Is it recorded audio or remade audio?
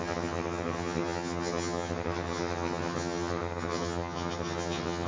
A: remade